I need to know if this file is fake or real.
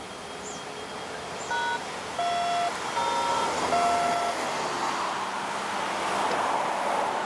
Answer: real